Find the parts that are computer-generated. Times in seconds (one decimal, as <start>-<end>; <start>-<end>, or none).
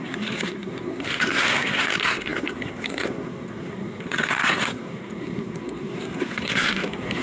0.0-7.2